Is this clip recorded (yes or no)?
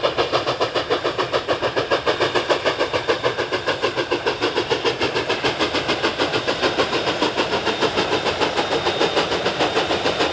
no